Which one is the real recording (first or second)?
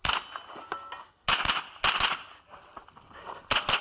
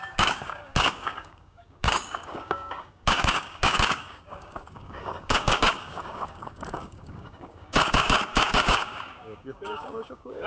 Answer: first